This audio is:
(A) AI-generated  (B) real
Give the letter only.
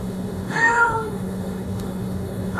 A